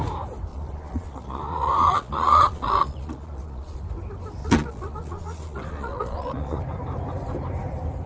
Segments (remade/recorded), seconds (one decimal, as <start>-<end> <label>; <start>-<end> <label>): 0.0-0.5 recorded; 0.5-3.8 remade; 3.8-4.4 recorded; 4.4-6.6 remade; 6.6-8.1 recorded